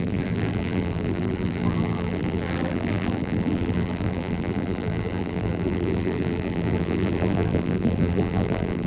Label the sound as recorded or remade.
remade